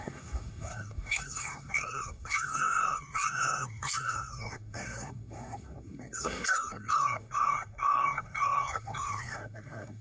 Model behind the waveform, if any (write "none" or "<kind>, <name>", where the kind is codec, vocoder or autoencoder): codec, SNAC